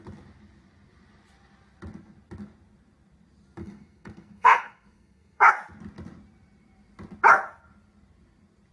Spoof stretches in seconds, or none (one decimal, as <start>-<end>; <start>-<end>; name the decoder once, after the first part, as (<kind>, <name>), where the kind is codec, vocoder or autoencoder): 3.6-5.5 (codec, SNAC)